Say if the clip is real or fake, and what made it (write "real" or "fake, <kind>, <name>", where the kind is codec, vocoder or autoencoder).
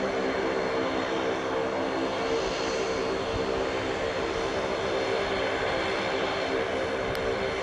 real